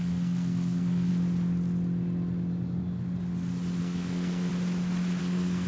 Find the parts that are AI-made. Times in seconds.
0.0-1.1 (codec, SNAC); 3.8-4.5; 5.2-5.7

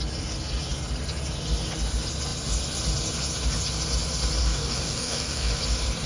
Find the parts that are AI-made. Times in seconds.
4.4-5.6 (codec, DAC)

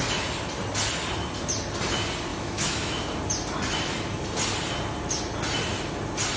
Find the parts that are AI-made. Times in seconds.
2.3-3.0 (autoencoder, DAC-VAE)

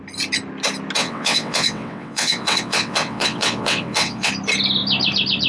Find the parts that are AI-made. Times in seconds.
1.0-4.3 (vocoder, WaveNeXt)

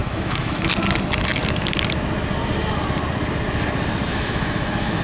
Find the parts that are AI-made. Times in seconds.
0.0-0.7 (autoencoder, DAC-VAE); 4.1-5.0